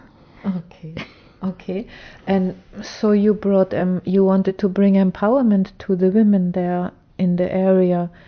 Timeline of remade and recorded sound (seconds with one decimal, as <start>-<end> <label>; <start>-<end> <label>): 0.0-0.5 recorded; 0.5-1.8 remade; 1.8-3.8 recorded; 3.8-4.5 remade; 4.5-8.3 recorded